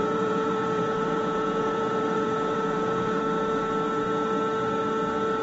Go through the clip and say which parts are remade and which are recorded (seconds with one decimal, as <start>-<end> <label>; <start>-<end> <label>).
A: 0.0-3.2 remade; 3.2-5.4 recorded